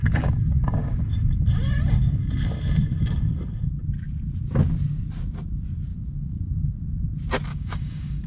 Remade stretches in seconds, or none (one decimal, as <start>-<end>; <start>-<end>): 0.0-1.0; 5.9-6.8; 7.5-8.3